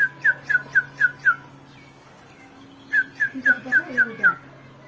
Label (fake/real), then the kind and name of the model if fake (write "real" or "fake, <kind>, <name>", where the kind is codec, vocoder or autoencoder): real